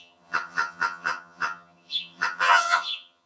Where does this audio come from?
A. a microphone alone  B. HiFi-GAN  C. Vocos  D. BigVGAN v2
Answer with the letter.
B